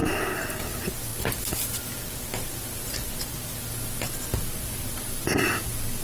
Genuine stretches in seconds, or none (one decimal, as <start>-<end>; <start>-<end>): 0.0-6.0

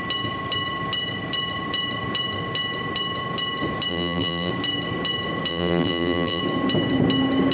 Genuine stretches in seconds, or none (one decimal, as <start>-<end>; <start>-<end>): 0.0-3.9; 4.5-5.5; 6.4-7.5

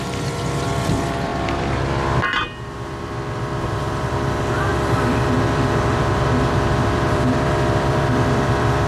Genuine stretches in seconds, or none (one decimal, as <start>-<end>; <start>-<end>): none

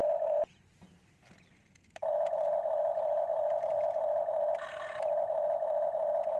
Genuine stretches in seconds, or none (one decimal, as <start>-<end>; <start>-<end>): 0.0-6.4

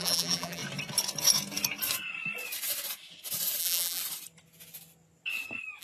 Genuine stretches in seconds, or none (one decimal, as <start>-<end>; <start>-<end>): 0.6-3.6; 4.0-5.8